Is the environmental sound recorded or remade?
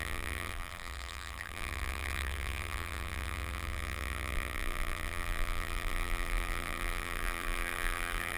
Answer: remade